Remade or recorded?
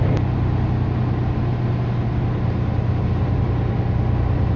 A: recorded